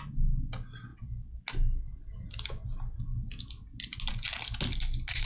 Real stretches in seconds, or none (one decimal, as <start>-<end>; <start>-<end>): 0.0-5.3